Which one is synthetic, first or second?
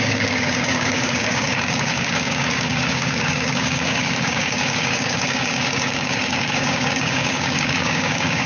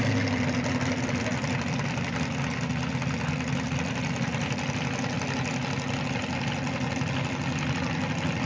first